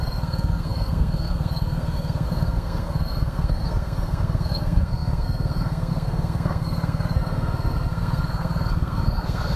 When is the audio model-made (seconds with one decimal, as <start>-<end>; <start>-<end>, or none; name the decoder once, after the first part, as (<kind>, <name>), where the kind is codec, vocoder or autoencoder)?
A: 0.0-9.6 (codec, SNAC)